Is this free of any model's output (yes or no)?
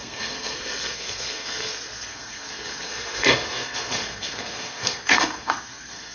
no